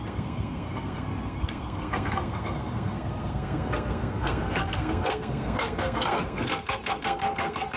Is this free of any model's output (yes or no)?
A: no